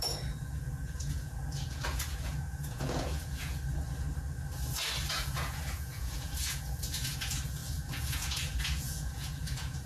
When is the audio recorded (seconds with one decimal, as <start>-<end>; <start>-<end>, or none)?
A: 3.6-5.1